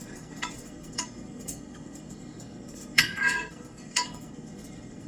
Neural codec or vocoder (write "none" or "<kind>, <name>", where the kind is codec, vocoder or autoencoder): codec, SNAC